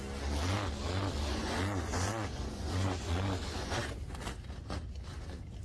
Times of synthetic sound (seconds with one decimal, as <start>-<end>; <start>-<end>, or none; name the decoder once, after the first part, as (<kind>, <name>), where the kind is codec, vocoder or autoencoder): 1.3-3.9 (vocoder, Vocos)